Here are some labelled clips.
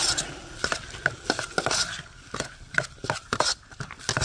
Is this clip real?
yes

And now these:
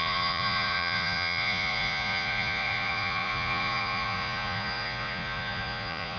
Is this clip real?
no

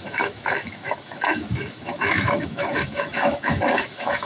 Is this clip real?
no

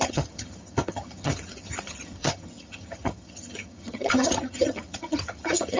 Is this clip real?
no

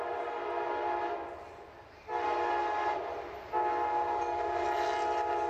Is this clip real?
yes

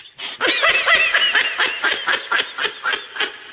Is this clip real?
yes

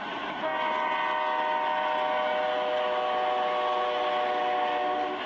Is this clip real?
yes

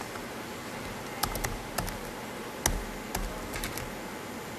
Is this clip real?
yes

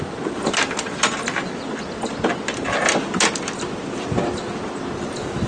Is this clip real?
yes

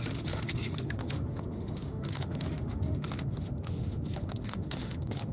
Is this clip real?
no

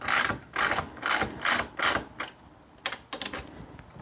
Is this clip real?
yes